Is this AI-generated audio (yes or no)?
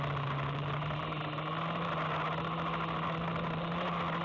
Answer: no